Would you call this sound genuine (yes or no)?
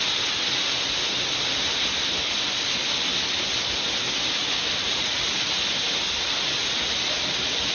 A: yes